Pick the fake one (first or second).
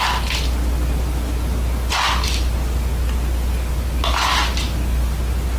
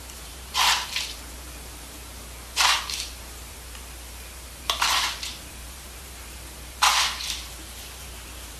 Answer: second